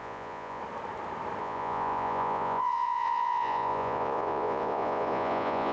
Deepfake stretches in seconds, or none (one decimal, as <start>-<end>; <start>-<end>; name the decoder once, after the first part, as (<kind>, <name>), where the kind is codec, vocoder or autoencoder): 0.0-0.6 (vocoder, Vocos); 1.4-5.7